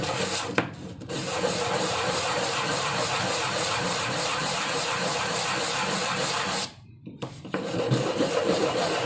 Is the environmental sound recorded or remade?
remade